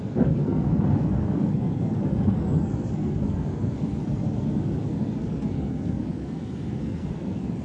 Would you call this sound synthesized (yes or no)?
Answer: yes